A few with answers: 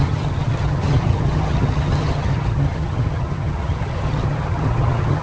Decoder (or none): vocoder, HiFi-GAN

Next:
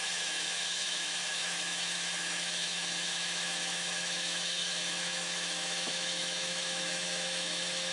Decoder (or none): autoencoder, DAC-VAE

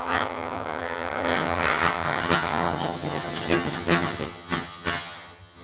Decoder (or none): vocoder, HiFi-GAN